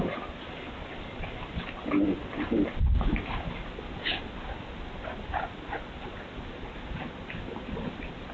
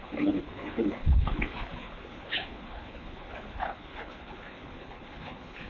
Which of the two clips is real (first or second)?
first